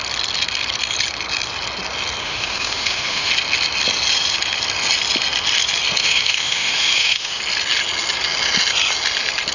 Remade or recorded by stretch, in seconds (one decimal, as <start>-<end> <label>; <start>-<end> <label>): 0.0-2.2 recorded; 2.2-3.3 remade; 3.3-6.0 recorded; 6.0-7.4 remade; 7.4-9.5 recorded